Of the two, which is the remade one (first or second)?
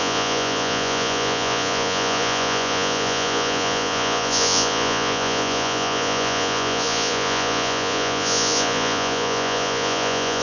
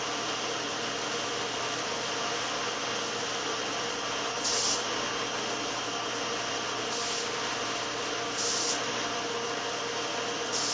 first